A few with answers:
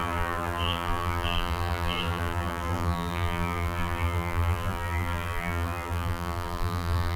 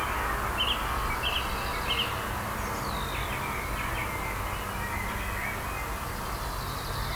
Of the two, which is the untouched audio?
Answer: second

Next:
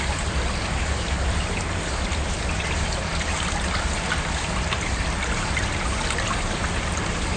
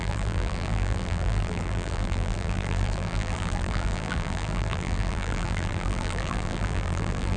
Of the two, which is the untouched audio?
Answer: first